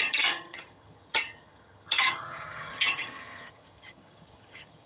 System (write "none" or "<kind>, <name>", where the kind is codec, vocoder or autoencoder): vocoder, HiFi-GAN